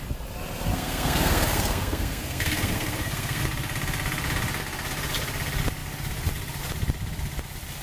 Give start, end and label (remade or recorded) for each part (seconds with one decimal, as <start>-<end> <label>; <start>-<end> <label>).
0.0-0.7 recorded; 0.7-3.4 remade; 3.4-7.8 recorded